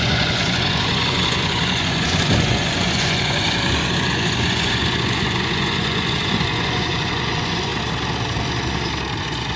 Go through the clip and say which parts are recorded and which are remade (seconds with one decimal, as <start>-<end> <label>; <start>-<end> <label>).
0.0-7.7 remade; 7.7-9.2 recorded; 9.2-9.6 remade